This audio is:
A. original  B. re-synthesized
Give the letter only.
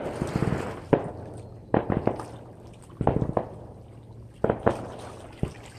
A